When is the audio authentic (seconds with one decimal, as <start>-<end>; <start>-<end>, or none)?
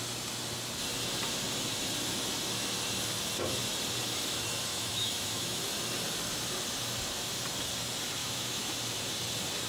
0.0-4.7; 5.6-8.2; 8.7-9.7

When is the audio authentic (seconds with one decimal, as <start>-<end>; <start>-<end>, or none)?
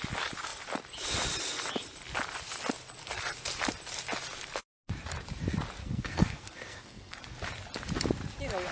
0.0-5.8; 7.2-8.7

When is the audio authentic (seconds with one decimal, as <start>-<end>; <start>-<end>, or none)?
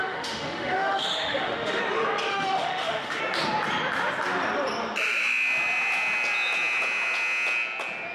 1.8-2.3; 3.2-8.1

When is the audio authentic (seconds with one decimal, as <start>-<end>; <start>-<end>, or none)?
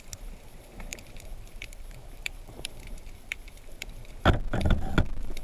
0.0-0.9; 4.1-5.4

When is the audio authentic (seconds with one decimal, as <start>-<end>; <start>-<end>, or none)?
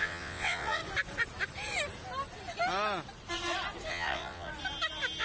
0.8-3.9; 4.5-5.2